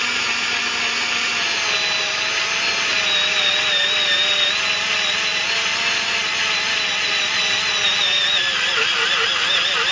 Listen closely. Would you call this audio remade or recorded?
recorded